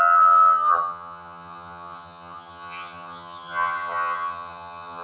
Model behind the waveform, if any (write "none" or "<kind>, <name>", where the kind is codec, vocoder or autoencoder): vocoder, HiFi-GAN